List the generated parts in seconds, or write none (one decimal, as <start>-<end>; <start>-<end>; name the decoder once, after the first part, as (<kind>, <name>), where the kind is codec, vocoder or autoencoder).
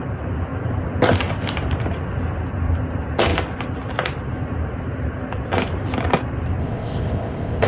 6.6-7.7 (codec, ZipCodec)